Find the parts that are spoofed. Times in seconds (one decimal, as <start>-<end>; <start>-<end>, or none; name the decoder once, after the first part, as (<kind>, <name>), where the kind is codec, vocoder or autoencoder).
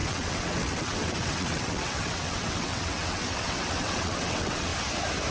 0.0-4.7 (vocoder, WaveNeXt)